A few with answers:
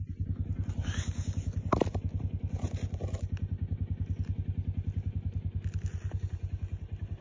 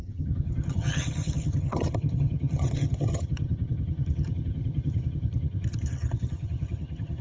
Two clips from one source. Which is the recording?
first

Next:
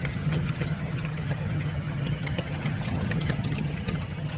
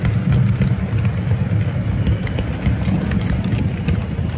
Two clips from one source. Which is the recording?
second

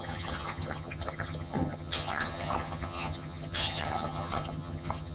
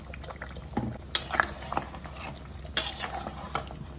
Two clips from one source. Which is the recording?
second